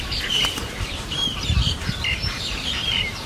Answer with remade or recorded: remade